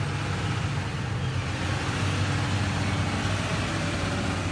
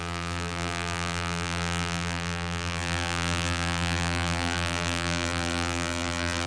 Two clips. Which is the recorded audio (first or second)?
first